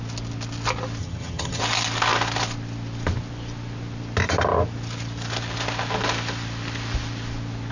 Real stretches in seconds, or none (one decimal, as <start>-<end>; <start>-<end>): 0.0-1.0; 1.6-7.7